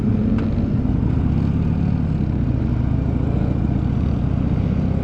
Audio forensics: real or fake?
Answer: real